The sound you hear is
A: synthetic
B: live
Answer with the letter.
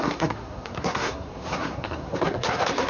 A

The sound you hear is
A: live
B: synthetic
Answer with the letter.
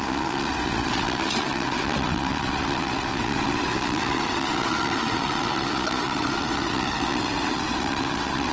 B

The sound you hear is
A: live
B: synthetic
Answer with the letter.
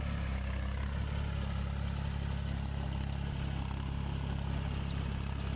A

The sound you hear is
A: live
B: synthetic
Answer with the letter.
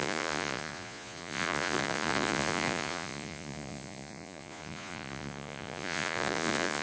B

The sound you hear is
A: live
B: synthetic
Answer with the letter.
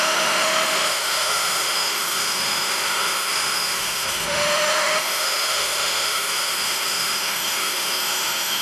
B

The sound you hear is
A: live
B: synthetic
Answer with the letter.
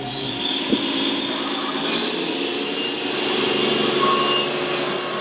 A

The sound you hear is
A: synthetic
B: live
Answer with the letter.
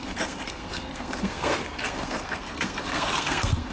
A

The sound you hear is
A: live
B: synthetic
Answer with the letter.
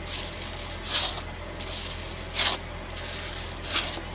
A